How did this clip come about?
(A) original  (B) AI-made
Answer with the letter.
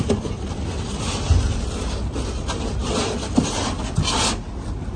A